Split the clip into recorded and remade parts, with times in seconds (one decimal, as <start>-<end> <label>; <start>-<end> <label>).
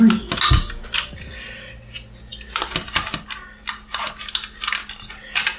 0.0-5.6 recorded